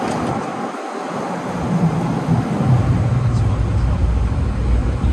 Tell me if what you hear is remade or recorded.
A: recorded